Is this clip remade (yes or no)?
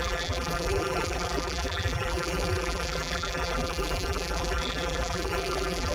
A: yes